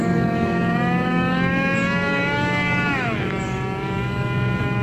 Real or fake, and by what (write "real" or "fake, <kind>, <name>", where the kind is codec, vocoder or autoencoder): fake, codec, DAC